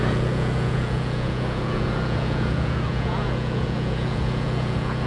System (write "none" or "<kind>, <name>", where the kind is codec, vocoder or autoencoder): vocoder, Vocos